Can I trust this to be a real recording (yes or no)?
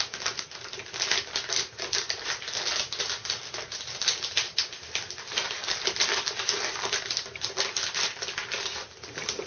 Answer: yes